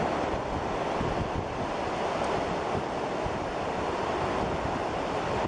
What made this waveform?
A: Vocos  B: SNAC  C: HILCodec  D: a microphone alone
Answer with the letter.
D